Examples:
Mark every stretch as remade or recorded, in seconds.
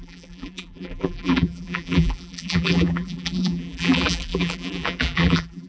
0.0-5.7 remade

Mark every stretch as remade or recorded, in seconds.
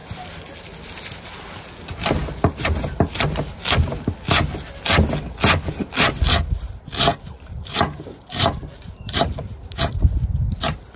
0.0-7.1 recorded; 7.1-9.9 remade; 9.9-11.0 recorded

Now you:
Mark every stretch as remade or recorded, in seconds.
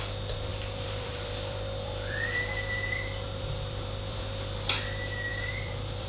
0.0-0.5 recorded; 0.5-4.2 remade; 4.2-5.3 recorded; 5.3-6.1 remade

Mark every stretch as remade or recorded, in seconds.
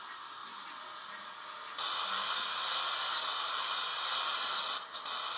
0.0-4.3 recorded; 4.3-4.8 remade; 4.8-5.4 recorded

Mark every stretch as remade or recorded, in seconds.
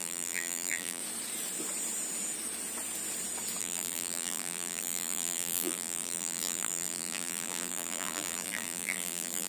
0.0-1.0 remade; 1.0-3.6 recorded; 3.6-9.5 remade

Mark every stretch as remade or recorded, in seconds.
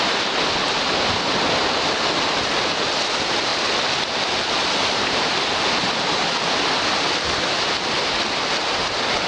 0.0-4.6 recorded; 4.6-5.6 remade; 5.6-9.3 recorded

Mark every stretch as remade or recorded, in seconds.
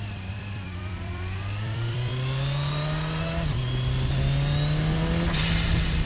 0.0-2.1 remade; 2.1-6.0 recorded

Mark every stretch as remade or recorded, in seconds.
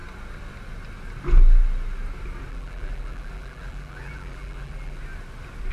0.0-2.5 recorded; 2.5-5.0 remade; 5.0-5.7 recorded